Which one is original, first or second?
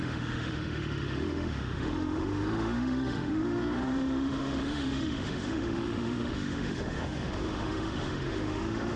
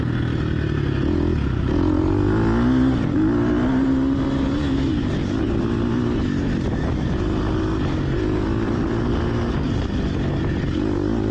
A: second